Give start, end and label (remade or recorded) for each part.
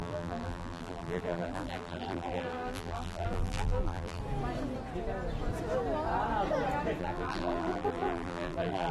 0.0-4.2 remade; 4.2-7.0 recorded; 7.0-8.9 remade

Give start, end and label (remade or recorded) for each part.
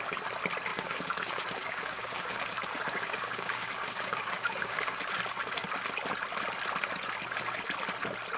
0.0-0.7 recorded; 0.7-5.0 remade; 5.0-8.4 recorded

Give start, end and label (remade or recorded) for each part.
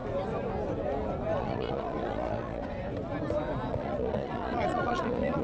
0.0-1.4 recorded; 1.4-2.6 remade; 2.6-3.7 recorded; 3.7-5.4 remade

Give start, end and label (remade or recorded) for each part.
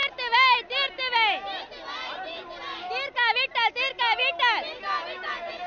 0.0-5.7 recorded